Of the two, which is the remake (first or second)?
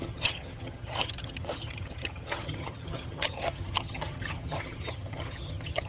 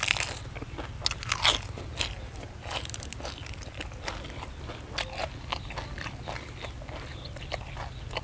first